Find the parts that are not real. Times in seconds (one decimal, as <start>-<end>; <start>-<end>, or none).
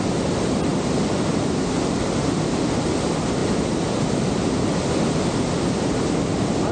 none